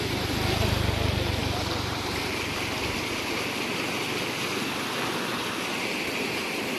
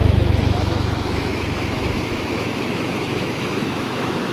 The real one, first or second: first